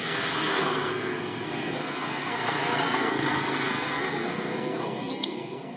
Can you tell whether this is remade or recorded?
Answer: remade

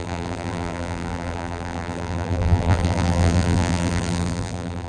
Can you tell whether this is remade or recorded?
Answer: remade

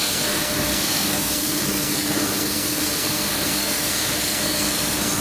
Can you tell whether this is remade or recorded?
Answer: remade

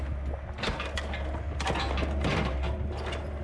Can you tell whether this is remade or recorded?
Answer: recorded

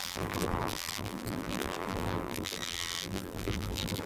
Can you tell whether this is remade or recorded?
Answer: remade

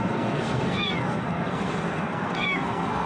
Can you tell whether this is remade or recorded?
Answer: remade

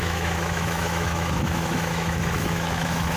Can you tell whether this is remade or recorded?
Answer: remade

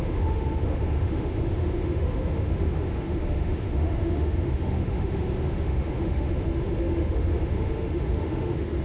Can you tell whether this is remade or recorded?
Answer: remade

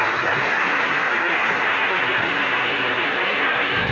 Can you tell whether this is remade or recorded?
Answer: remade